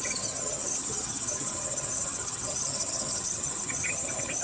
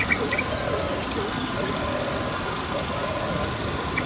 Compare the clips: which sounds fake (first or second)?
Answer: first